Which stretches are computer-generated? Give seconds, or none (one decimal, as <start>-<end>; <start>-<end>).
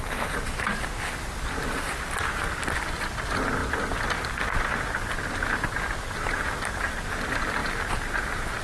none